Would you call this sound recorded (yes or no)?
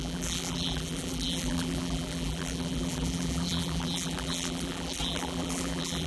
no